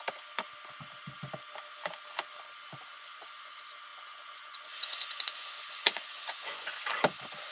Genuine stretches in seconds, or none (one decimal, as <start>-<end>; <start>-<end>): 0.0-2.9; 3.5-3.9; 6.9-7.5